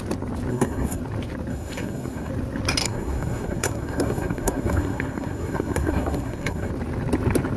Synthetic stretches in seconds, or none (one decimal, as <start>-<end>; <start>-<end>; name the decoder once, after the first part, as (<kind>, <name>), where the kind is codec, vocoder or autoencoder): 0.5-1.0 (codec, SNAC); 1.5-2.3; 2.8-6.7